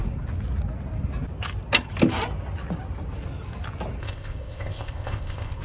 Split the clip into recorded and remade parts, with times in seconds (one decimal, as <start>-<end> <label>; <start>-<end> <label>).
0.0-4.0 recorded; 4.0-5.6 remade